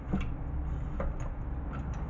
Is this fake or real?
real